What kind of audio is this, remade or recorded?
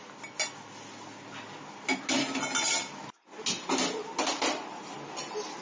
recorded